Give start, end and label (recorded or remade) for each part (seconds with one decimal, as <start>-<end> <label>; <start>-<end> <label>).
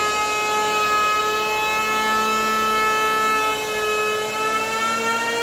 0.0-5.4 recorded